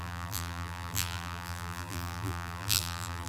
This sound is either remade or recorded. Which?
remade